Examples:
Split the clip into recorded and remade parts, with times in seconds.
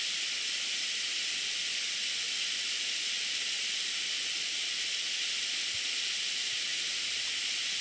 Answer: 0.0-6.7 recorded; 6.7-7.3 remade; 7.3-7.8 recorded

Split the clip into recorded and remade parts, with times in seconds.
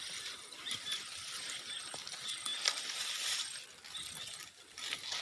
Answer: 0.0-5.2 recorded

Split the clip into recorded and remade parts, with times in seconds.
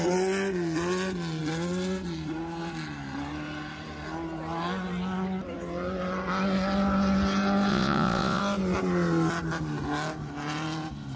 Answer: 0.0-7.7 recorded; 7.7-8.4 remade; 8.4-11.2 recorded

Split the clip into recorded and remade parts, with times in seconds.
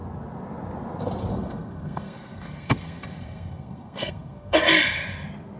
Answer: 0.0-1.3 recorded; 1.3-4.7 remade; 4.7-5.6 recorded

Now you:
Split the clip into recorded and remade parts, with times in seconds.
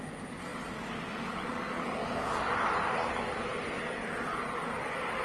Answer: 0.0-5.2 recorded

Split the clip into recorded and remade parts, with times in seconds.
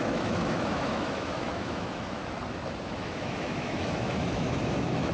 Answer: 0.0-2.2 remade; 2.2-2.8 recorded; 2.8-5.1 remade